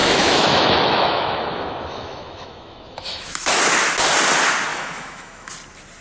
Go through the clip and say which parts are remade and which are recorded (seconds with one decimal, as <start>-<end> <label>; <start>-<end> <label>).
0.0-3.6 remade; 3.6-4.7 recorded; 4.7-5.5 remade; 5.5-6.0 recorded